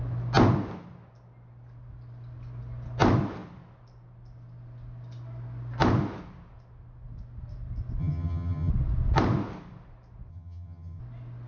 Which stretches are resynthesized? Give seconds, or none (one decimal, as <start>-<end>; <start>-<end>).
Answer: 8.0-8.7; 10.3-11.0